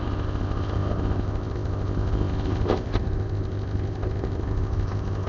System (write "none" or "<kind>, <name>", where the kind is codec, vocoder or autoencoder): codec, ZipCodec